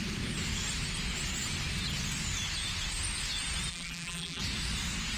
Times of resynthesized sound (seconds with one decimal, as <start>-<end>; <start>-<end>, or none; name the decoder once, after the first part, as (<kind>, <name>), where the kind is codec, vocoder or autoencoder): 3.7-4.4 (vocoder, BigVGAN v2)